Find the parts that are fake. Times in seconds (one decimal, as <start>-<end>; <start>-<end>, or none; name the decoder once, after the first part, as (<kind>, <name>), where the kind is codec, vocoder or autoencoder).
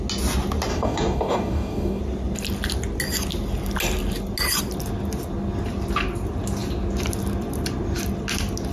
0.7-2.0 (codec, DAC)